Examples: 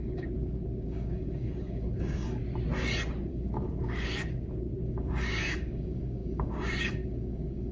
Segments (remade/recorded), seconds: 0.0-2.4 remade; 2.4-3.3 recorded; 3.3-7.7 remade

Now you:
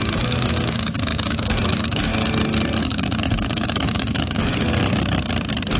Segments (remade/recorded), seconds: 0.0-2.1 remade; 2.1-2.8 recorded; 2.8-4.5 remade; 4.5-5.8 recorded